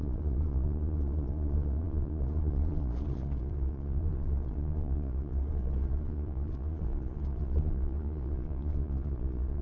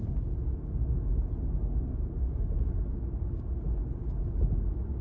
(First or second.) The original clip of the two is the second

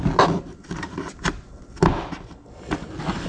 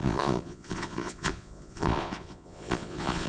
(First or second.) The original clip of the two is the first